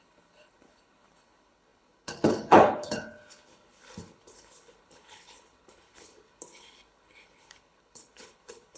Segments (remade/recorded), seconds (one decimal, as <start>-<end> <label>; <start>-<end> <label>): 0.0-8.8 remade